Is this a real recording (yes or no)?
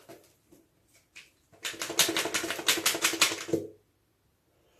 yes